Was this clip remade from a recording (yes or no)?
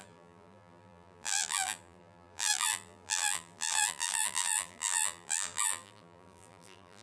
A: yes